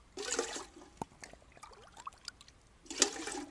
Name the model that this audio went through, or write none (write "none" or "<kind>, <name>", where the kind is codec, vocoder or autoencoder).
none